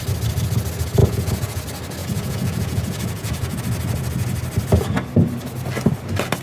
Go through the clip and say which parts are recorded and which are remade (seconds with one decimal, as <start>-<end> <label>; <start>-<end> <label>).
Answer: 0.0-1.0 recorded; 1.0-1.6 remade; 1.6-2.0 recorded; 2.0-3.6 remade; 3.6-6.4 recorded